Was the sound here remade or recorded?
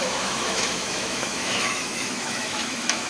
remade